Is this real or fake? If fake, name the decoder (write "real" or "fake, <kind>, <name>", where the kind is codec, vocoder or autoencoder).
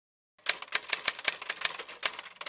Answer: real